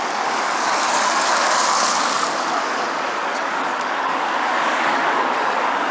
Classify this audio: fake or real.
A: fake